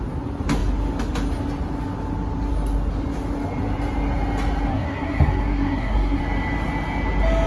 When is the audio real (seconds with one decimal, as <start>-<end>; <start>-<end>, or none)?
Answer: 0.0-4.7; 6.2-7.5